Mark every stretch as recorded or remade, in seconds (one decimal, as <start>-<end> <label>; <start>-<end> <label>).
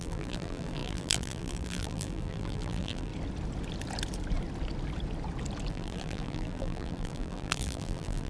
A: 0.0-3.1 remade; 3.1-5.7 recorded; 5.7-8.3 remade